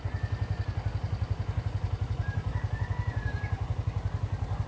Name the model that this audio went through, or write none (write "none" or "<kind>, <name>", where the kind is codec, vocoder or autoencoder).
none